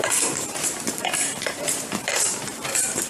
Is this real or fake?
fake